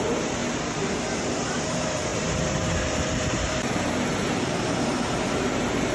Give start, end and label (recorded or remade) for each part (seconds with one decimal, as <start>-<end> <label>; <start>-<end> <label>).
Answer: 0.0-0.4 remade; 0.4-1.5 recorded; 1.5-5.9 remade